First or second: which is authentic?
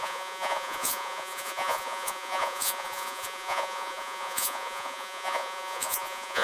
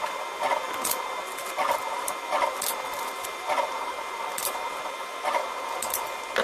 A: second